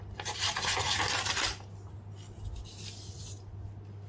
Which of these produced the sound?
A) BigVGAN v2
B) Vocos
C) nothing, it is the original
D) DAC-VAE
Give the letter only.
C